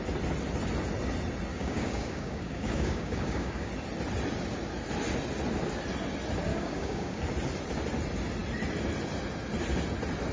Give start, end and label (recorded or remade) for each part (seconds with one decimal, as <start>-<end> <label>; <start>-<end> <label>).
0.0-1.5 recorded; 1.5-3.7 remade; 3.7-6.5 recorded; 6.5-7.2 remade; 7.2-10.3 recorded